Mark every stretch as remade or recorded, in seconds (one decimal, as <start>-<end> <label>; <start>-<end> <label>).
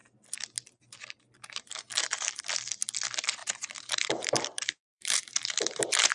0.0-3.4 recorded; 3.4-6.1 remade